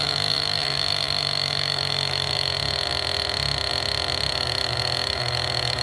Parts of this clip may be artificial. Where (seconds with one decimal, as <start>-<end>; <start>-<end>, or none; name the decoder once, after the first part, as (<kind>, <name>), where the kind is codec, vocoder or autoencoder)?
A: 0.0-2.5 (autoencoder, DAC-VAE); 4.3-5.8